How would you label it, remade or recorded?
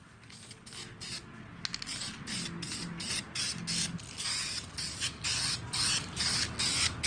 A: recorded